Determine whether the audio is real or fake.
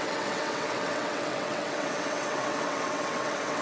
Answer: fake